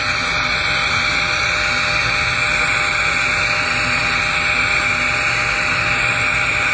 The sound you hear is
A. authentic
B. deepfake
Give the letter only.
A